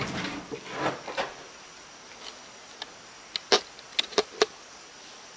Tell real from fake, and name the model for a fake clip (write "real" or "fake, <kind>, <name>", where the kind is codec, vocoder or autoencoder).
real